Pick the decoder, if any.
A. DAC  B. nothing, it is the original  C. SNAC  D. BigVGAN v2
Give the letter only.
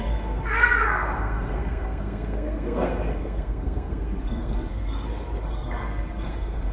C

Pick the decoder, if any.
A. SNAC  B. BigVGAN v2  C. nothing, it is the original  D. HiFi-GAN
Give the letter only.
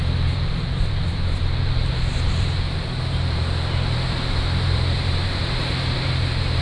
B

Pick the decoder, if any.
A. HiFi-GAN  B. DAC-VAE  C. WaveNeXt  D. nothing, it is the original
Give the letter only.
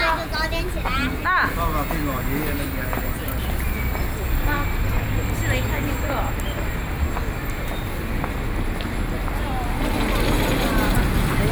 D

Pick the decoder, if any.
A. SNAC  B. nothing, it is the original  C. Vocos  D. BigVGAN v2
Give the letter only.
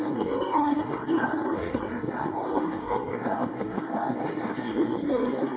A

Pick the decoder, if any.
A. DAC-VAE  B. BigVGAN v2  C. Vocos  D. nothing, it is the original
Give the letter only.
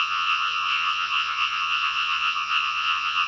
C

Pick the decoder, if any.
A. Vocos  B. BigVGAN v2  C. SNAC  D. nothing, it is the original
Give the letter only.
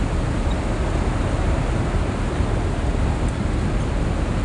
D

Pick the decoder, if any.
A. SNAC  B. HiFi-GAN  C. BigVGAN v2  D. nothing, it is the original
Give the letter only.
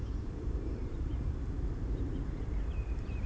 C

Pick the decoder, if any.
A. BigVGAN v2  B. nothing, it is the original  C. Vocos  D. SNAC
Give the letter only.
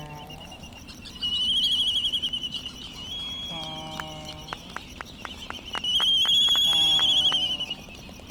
B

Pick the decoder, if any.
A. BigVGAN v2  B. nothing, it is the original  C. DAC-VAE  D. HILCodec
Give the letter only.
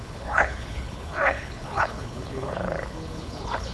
D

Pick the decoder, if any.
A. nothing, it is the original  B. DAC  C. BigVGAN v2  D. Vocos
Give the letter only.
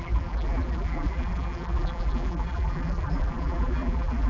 C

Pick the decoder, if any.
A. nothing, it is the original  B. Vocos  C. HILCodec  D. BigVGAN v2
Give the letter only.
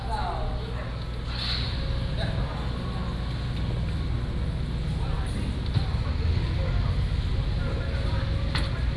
A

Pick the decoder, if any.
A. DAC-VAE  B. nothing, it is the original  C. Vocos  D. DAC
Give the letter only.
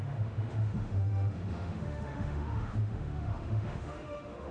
A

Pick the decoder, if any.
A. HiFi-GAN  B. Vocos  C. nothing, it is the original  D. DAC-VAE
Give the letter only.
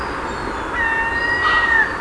C